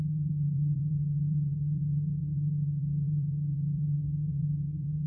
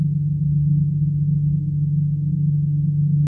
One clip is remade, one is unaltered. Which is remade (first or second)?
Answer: first